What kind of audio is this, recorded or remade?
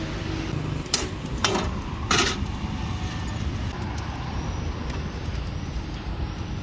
recorded